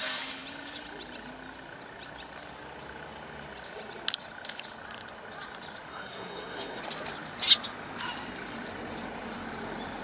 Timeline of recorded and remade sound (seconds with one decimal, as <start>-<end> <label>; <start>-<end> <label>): 0.0-5.9 recorded; 5.9-6.8 remade; 6.8-10.0 recorded